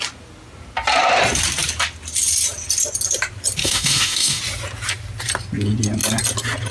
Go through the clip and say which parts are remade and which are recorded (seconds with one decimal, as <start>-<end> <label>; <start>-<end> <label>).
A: 0.0-3.6 recorded; 3.6-4.4 remade; 4.4-6.7 recorded